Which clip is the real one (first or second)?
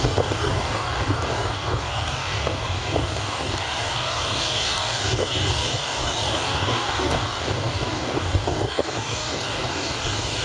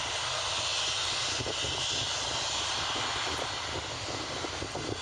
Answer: second